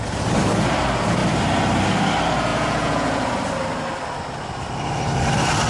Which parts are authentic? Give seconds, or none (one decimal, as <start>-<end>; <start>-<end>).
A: 0.0-2.5; 3.3-5.7